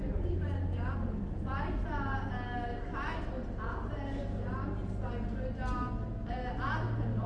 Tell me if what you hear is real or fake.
real